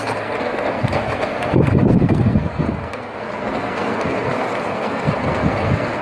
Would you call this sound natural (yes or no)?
no